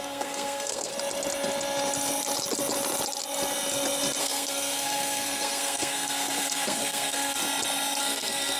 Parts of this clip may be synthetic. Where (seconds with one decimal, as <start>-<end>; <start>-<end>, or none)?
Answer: 0.0-0.9; 4.2-7.4; 8.0-8.6